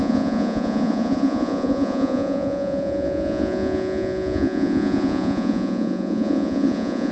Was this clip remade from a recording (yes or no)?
yes